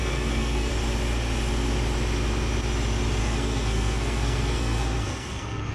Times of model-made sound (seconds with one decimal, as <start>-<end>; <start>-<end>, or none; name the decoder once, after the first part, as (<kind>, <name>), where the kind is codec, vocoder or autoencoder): 0.0-0.7 (codec, SNAC); 3.2-5.7